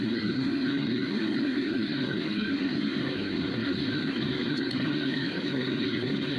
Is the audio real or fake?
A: fake